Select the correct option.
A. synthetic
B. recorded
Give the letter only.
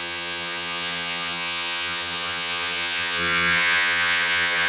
A